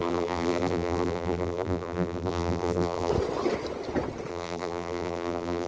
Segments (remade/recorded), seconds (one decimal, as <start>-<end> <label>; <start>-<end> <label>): 0.0-3.1 remade; 3.1-4.3 recorded; 4.3-5.7 remade